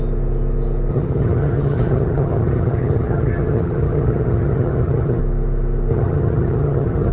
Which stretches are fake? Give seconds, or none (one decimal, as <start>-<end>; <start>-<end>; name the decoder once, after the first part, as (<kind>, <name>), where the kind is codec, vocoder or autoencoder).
0.9-5.2 (vocoder, HiFi-GAN); 5.9-7.1